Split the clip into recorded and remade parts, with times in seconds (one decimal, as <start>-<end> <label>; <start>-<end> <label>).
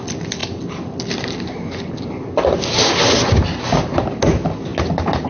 0.0-5.3 recorded